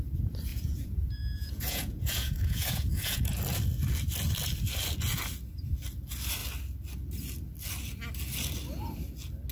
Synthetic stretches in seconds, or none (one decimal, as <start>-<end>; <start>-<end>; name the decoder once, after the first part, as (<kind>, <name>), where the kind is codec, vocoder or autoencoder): 0.5-3.4 (vocoder, Vocos)